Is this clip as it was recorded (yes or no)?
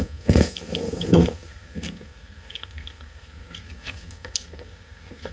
no